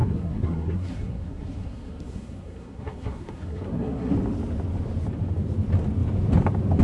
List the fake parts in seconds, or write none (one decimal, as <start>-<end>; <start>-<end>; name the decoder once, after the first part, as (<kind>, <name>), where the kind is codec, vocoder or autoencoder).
0.0-4.1 (codec, SNAC)